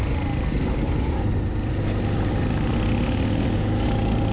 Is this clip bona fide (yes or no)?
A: yes